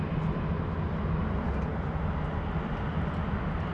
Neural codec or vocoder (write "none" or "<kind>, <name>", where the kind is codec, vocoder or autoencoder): none